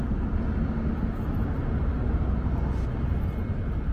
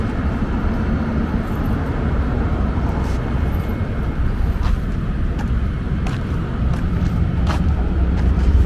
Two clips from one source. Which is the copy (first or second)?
second